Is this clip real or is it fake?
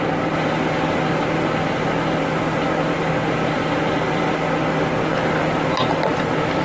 real